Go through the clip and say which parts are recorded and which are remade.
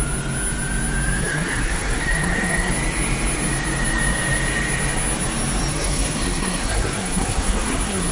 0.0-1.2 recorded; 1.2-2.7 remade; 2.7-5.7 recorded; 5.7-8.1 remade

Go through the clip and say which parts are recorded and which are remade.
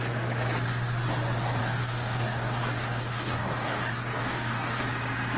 0.0-1.6 recorded; 1.6-4.8 remade; 4.8-5.4 recorded